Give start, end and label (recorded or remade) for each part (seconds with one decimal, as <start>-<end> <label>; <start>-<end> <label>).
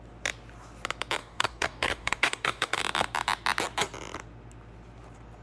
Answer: 0.0-1.2 recorded; 1.2-2.8 remade; 2.8-5.4 recorded